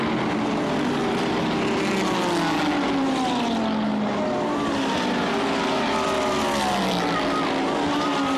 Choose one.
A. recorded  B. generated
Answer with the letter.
A